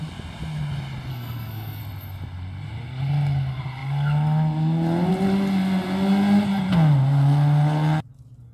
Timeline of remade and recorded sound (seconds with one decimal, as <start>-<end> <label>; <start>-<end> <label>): 0.0-1.1 recorded; 1.1-1.8 remade; 1.8-8.5 recorded